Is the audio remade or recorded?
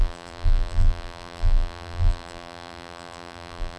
remade